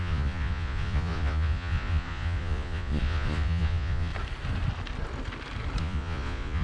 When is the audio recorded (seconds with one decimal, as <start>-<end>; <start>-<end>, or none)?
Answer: 4.1-5.8